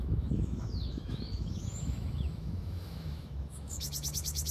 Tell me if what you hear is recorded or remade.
remade